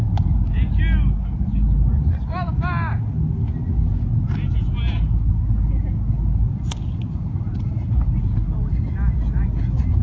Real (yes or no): yes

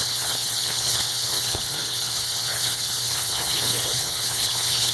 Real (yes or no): no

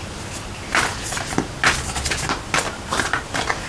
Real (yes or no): yes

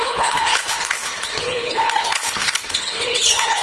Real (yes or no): no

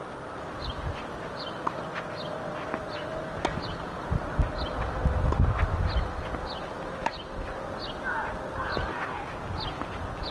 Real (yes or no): yes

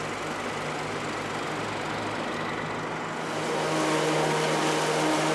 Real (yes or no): yes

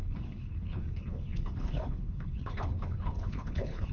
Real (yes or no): no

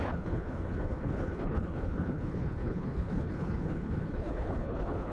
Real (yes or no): no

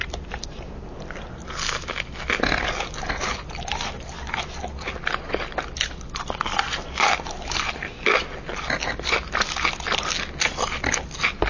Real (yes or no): yes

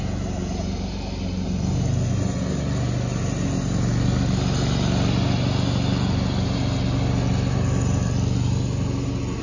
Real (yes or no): yes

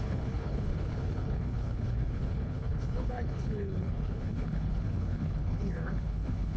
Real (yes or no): no